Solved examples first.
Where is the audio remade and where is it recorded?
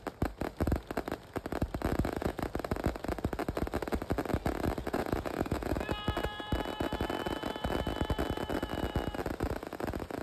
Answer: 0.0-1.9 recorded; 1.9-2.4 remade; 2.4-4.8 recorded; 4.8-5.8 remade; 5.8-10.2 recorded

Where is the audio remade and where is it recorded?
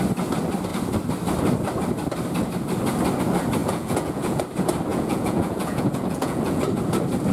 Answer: 0.0-3.6 recorded; 3.6-4.4 remade; 4.4-4.9 recorded; 4.9-6.6 remade; 6.6-7.3 recorded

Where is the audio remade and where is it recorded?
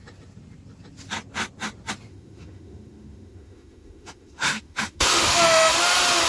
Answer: 0.0-2.1 recorded; 2.1-5.7 remade; 5.7-6.3 recorded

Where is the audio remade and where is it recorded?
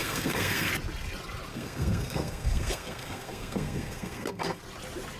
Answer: 0.0-0.7 remade; 0.7-1.5 recorded; 1.5-4.6 remade; 4.6-5.2 recorded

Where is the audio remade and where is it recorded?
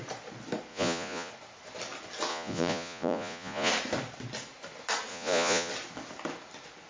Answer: 0.0-0.7 recorded; 0.7-1.3 remade; 1.3-2.3 recorded; 2.3-3.7 remade; 3.7-5.1 recorded; 5.1-5.7 remade; 5.7-6.9 recorded